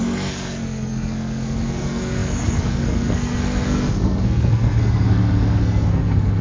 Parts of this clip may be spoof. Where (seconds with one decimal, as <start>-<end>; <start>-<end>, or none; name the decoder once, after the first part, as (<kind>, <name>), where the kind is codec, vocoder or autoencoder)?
0.0-6.4 (codec, SNAC)